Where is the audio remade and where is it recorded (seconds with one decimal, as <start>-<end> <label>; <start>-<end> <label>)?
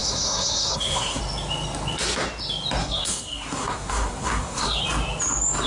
0.0-1.2 remade; 1.2-2.8 recorded; 2.8-4.8 remade; 4.8-5.7 recorded